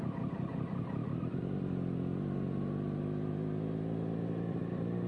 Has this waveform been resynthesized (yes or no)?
no